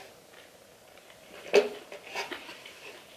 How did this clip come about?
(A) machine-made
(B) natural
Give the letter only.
B